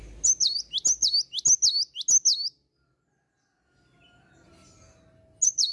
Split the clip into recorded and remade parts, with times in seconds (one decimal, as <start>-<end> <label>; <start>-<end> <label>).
0.0-5.7 recorded